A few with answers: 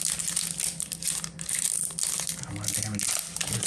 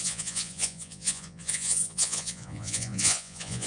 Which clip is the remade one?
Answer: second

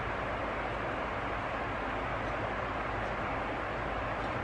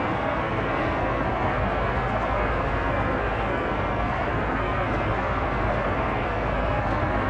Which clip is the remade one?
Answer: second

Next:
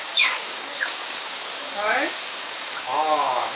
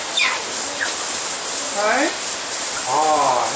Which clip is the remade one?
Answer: first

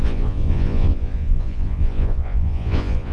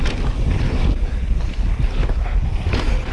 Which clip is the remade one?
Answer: first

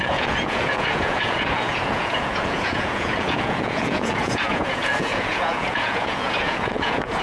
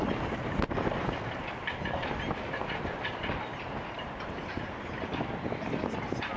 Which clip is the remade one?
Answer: first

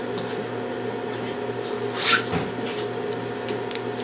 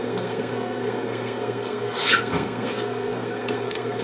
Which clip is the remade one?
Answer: second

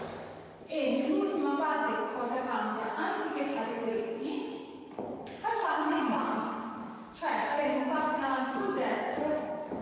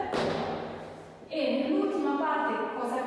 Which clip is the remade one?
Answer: first